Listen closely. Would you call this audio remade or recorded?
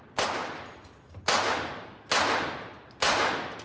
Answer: recorded